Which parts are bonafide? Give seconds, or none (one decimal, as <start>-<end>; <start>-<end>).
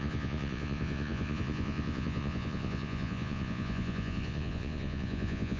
none